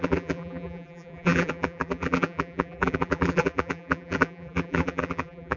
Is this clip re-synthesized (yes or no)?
yes